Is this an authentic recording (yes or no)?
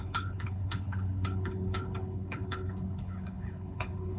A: no